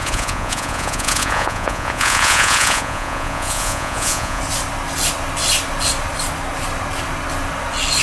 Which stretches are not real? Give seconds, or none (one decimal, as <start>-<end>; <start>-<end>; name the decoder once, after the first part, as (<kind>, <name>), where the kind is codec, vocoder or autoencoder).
0.0-4.4 (vocoder, Vocos)